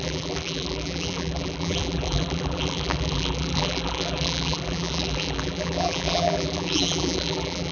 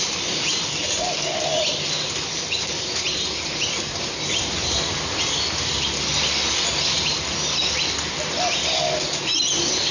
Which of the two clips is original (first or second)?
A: second